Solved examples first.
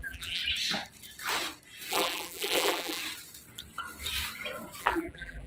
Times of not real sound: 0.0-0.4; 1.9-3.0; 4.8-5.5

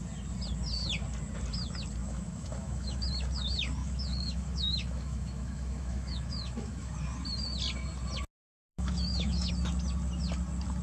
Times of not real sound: 2.0-3.1; 3.8-6.9; 8.7-9.5

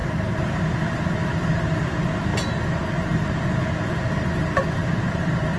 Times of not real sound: none

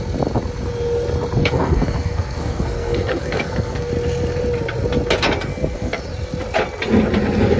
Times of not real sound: 1.4-3.9; 5.5-6.0

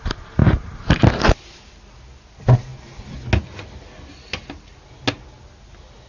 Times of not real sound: none